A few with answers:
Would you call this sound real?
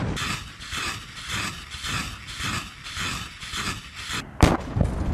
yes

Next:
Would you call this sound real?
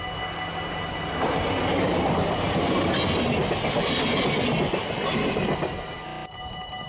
yes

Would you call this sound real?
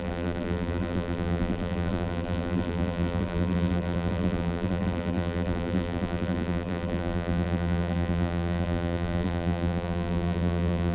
no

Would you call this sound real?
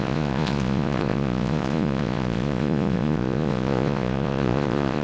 no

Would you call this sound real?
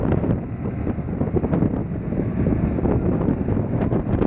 yes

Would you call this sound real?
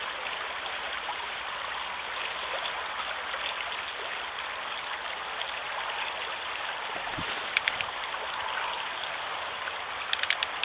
yes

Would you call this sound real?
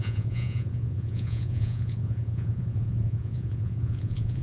no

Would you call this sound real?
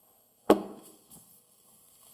no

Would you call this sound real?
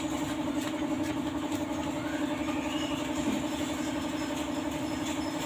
yes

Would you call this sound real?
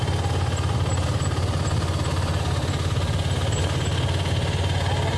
yes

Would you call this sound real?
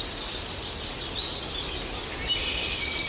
yes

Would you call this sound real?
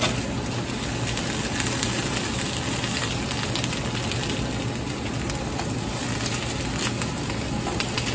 yes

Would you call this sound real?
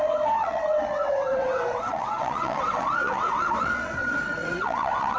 no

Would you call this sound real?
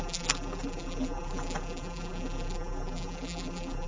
no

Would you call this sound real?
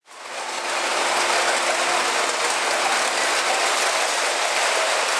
yes